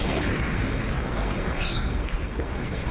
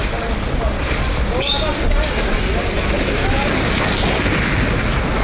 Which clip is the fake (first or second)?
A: first